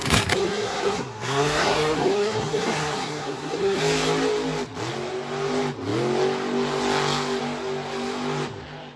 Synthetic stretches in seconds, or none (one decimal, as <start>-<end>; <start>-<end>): 0.0-3.8